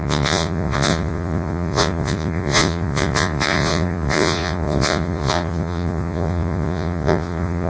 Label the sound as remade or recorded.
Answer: remade